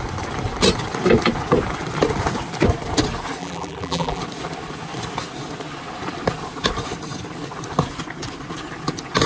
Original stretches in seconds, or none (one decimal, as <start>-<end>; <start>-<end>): 0.0-3.4; 4.2-9.3